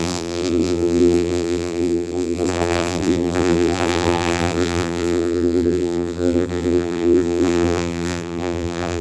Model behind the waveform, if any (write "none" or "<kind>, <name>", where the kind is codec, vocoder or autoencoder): vocoder, BigVGAN v2